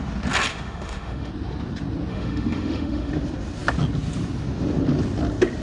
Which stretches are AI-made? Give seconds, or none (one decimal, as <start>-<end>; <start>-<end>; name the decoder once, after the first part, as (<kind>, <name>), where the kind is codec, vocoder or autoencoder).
0.5-1.3 (autoencoder, DAC-VAE); 2.1-3.1